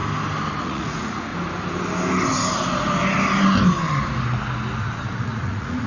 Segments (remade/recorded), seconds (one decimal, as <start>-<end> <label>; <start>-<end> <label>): 0.0-0.6 recorded; 0.6-1.3 remade; 1.3-4.8 recorded; 4.8-5.9 remade